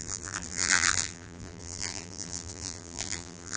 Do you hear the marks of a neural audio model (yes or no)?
yes